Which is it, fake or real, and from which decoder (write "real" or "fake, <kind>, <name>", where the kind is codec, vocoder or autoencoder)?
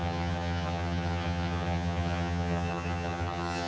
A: fake, vocoder, HiFi-GAN